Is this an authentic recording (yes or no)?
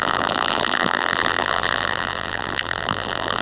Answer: no